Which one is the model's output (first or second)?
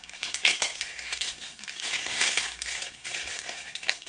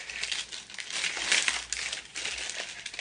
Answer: first